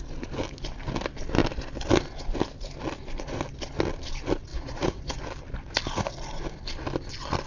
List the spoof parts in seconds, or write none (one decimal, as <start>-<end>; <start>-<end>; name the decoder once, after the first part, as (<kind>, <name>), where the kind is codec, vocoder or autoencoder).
4.5-5.2 (vocoder, Vocos)

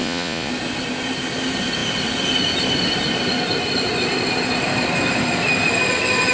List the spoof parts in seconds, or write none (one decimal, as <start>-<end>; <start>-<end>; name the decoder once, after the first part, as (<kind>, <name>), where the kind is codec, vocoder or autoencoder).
0.0-0.5 (vocoder, Vocos)

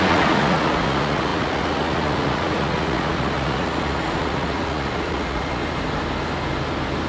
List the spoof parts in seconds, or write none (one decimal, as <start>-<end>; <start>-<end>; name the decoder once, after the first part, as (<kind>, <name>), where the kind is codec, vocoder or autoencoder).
0.0-5.6 (vocoder, Vocos)

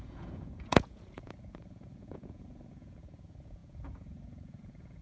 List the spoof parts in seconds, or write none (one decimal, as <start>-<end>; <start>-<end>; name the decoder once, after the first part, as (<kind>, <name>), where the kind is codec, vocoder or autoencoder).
0.0-5.0 (vocoder, Vocos)

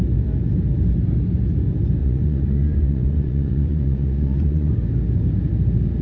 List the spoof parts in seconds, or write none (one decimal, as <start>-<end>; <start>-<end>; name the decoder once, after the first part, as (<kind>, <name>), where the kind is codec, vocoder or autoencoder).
2.0-4.7 (vocoder, Vocos)

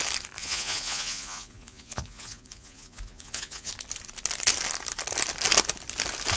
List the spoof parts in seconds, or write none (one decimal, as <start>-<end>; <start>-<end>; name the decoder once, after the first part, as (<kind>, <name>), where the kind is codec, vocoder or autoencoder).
0.4-3.7 (vocoder, Vocos)

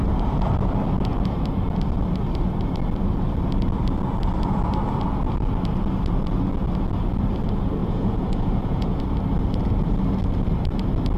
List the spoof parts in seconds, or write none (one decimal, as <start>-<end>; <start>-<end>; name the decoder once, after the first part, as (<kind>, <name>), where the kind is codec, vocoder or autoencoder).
7.8-9.0 (vocoder, Vocos)